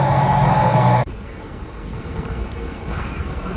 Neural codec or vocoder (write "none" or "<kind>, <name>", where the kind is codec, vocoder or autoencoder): codec, SNAC